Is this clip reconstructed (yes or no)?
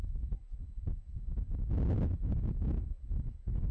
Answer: no